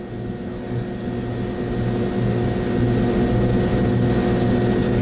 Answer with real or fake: real